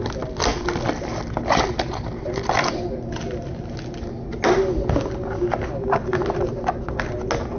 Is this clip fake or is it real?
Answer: real